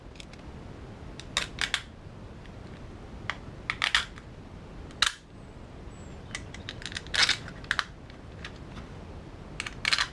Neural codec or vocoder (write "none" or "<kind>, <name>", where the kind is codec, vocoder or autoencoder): none